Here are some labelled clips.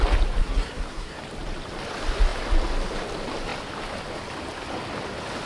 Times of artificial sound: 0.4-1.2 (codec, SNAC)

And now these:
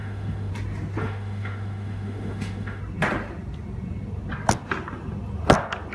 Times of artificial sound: 0.0-0.5 (autoencoder, DAC-VAE); 1.0-2.8

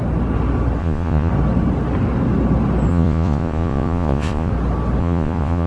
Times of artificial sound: 0.8-1.3 (vocoder, Vocos); 2.9-4.5; 5.0-5.7

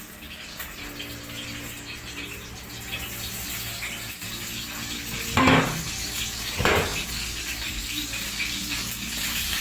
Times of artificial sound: 0.0-0.8 (codec, DAC); 4.1-9.6

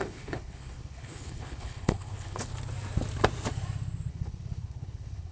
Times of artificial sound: 0.0-2.5 (codec, HILCodec); 4.1-5.3

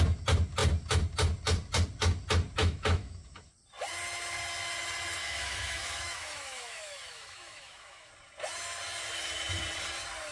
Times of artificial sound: 2.6-3.5 (autoencoder, DAC-VAE); 5.2-8.1

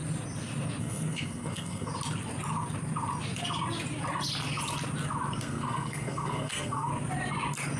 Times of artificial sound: 0.8-1.9 (codec, SNAC); 5.4-6.9

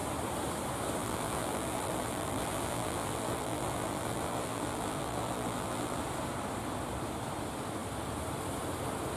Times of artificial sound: 1.0-6.0 (vocoder, BigVGAN v2)